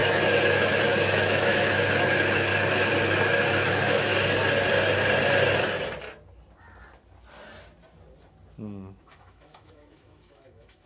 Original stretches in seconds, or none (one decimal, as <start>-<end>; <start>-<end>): 2.5-3.2; 4.1-9.0